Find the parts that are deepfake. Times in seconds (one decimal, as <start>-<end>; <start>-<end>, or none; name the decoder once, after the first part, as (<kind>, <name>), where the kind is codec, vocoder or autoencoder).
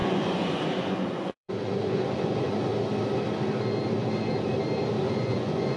0.0-2.7 (vocoder, Vocos); 3.9-4.3; 5.0-5.8